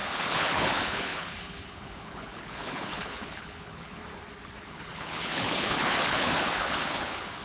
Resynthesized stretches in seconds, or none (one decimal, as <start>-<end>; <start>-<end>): 0.0-4.0; 4.6-7.4